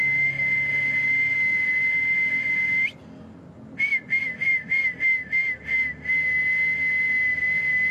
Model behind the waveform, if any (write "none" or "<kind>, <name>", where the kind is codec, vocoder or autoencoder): none